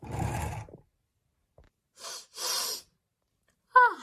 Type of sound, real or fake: real